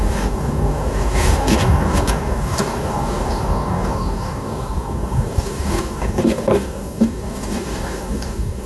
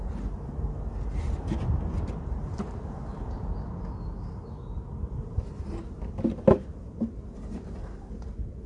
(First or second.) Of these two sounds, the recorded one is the second